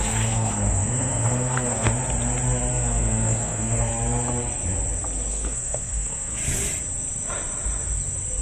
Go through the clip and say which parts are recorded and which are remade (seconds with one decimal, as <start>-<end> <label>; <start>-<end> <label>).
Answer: 0.0-1.9 remade; 1.9-2.7 recorded; 2.7-3.9 remade; 3.9-5.3 recorded; 5.3-6.4 remade; 6.4-8.4 recorded